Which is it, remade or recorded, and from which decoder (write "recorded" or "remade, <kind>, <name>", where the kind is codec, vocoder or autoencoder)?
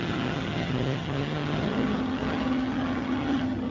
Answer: remade, vocoder, HiFi-GAN